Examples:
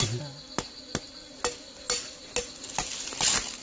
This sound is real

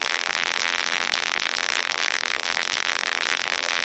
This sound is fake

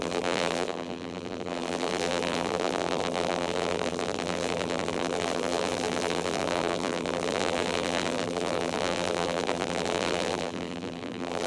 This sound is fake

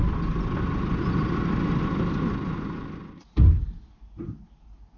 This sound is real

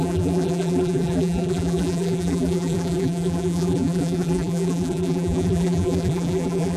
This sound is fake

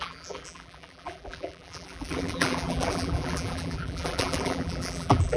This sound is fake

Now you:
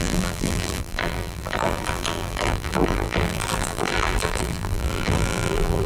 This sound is fake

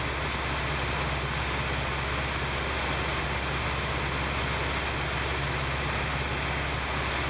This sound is real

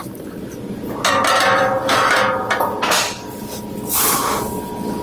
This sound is real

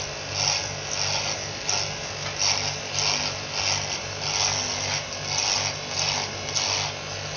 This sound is real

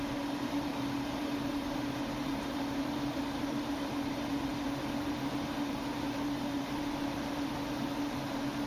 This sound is fake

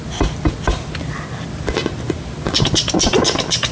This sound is real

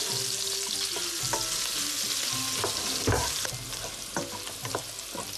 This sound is real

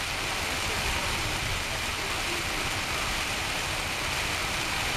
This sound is fake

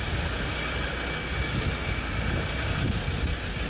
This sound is real